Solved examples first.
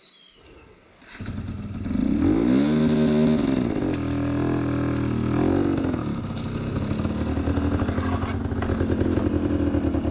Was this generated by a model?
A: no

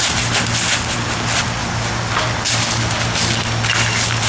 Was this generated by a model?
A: no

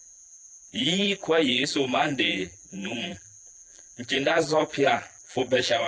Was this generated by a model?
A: yes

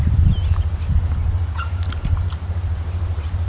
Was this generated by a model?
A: no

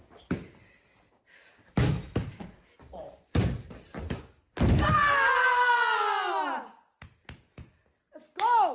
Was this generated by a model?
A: no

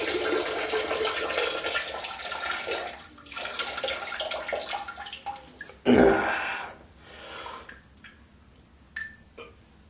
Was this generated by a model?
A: no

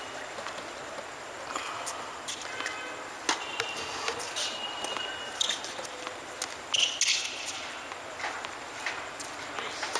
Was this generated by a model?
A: no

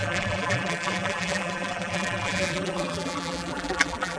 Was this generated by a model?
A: yes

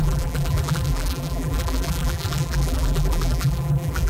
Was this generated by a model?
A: yes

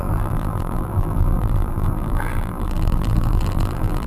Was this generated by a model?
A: yes